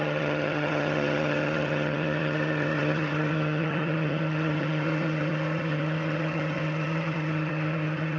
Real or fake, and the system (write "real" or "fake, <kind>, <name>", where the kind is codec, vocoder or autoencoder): fake, vocoder, HiFi-GAN